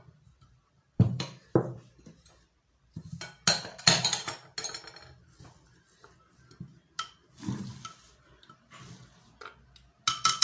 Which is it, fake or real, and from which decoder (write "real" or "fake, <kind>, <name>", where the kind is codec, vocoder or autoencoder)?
real